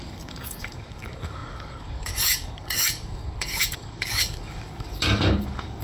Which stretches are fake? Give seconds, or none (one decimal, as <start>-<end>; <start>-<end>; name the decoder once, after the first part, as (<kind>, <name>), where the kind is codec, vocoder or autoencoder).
0.0-5.8 (codec, DAC)